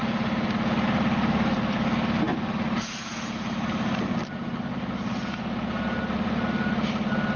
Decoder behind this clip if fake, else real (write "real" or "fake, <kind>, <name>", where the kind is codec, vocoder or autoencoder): real